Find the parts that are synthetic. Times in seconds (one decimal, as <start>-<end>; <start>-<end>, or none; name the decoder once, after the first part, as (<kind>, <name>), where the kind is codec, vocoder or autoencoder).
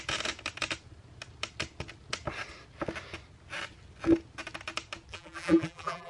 5.1-6.1 (vocoder, BigVGAN v2)